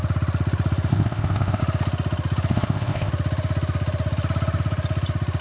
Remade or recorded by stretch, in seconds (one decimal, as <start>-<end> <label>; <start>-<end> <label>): 0.0-0.9 recorded; 0.9-1.6 remade; 1.6-2.5 recorded; 2.5-3.1 remade; 3.1-5.4 recorded